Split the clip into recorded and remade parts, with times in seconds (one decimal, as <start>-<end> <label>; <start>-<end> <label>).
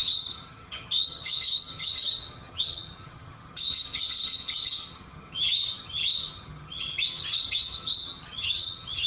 0.0-9.1 remade